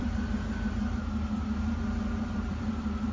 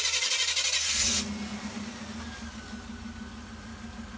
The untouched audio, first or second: second